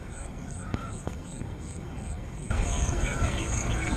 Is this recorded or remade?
remade